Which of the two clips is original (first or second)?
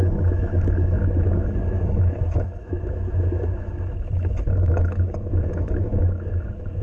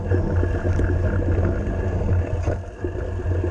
second